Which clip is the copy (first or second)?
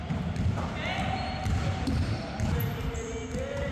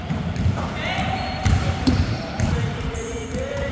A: second